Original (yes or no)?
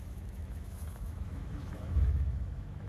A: no